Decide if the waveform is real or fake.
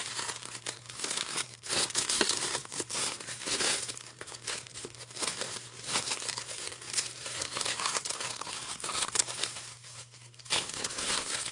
fake